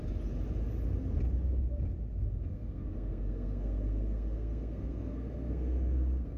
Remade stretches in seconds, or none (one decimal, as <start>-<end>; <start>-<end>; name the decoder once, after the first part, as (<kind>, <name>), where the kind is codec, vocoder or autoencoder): 2.4-6.4 (codec, SNAC)